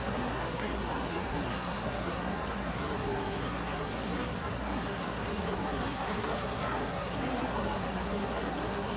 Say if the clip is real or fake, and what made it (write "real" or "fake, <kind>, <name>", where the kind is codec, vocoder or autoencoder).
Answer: fake, codec, SNAC